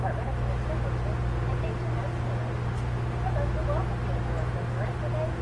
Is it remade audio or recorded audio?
recorded